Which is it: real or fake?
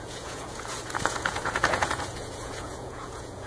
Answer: fake